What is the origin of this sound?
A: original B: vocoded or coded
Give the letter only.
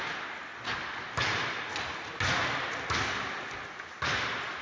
A